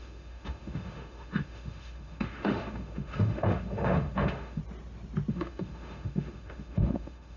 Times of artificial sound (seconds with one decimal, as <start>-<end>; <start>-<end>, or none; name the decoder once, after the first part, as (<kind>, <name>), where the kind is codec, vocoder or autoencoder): 0.0-4.6 (autoencoder, DAC-VAE); 5.3-7.4